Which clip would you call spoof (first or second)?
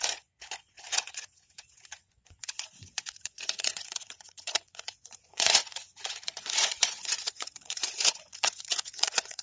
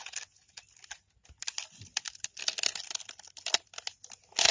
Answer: first